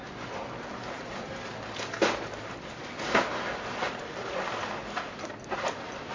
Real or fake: real